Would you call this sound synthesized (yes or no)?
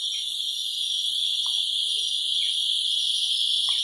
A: no